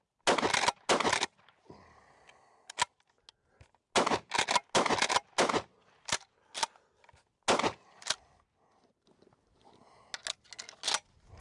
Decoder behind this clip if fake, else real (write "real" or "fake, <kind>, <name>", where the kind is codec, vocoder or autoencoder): real